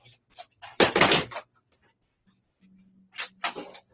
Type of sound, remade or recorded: recorded